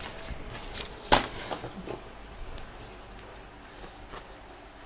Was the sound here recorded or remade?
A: recorded